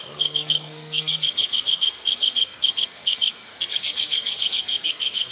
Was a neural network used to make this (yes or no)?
yes